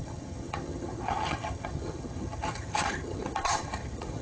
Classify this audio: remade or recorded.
remade